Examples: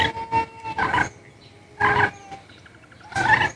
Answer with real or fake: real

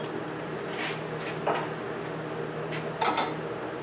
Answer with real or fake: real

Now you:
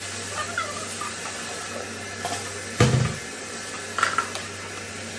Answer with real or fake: real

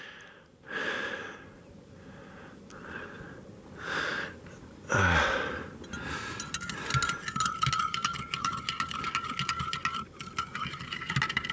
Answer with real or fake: real